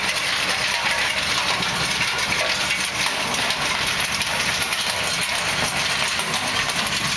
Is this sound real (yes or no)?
yes